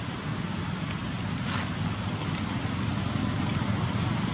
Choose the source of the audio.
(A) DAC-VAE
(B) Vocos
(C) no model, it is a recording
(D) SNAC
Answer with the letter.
C